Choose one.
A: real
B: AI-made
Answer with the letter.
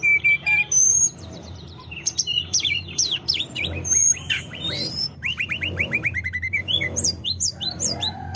B